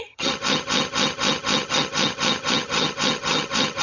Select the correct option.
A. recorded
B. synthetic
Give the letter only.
B